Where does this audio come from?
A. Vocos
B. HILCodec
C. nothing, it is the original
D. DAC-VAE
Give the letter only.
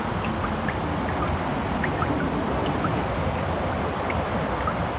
C